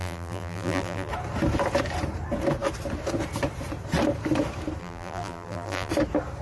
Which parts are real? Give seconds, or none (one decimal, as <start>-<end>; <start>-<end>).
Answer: 1.1-4.8; 5.9-6.4